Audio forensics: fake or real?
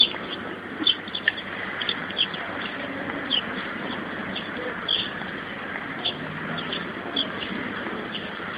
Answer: real